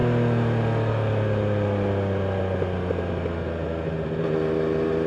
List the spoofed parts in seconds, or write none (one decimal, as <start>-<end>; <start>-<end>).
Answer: none